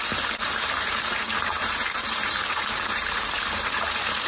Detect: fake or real fake